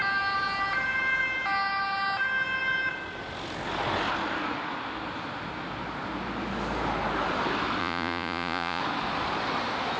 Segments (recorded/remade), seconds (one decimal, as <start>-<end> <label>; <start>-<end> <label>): 0.0-7.8 recorded; 7.8-8.8 remade; 8.8-10.0 recorded